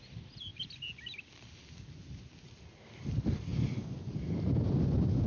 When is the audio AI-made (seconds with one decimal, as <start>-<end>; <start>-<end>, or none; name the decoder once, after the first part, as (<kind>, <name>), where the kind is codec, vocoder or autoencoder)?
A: 0.0-0.5 (vocoder, BigVGAN v2); 2.6-3.5; 4.2-5.3